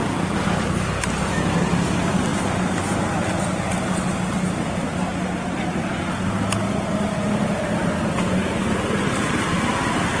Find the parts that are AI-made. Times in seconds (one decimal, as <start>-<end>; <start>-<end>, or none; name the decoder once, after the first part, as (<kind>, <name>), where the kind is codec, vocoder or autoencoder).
none